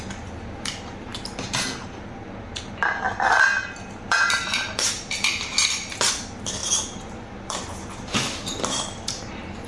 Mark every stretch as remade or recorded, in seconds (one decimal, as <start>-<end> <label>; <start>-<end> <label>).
0.0-1.1 remade; 1.1-2.4 recorded; 2.4-9.7 remade